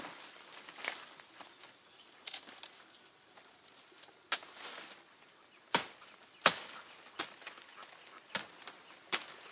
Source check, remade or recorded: recorded